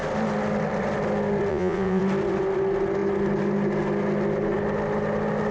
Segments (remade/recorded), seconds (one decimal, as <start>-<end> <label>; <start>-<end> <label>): 0.0-1.5 recorded; 1.5-2.0 remade; 2.0-5.5 recorded